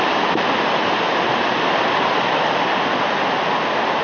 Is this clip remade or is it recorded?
recorded